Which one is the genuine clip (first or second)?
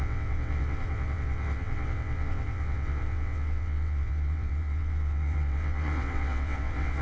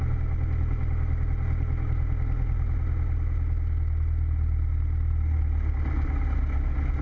second